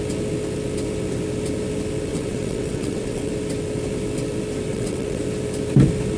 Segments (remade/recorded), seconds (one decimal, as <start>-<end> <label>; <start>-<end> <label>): 0.0-2.1 recorded; 2.1-3.3 remade; 3.3-4.7 recorded; 4.7-5.2 remade; 5.2-6.2 recorded